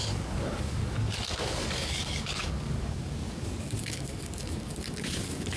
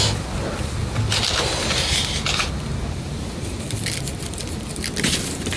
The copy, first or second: first